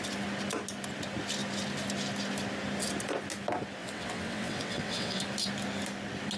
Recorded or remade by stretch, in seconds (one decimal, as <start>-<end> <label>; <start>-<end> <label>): 0.0-3.8 recorded; 3.8-5.2 remade; 5.2-6.4 recorded